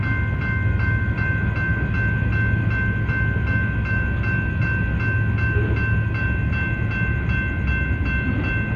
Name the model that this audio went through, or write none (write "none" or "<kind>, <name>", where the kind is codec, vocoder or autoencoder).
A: none